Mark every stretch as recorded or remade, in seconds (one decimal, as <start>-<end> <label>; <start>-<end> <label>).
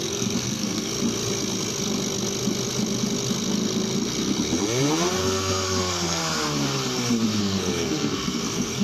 0.0-0.9 remade; 0.9-5.2 recorded; 5.2-6.2 remade; 6.2-7.4 recorded; 7.4-8.8 remade